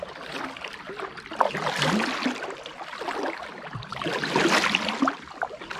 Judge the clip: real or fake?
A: real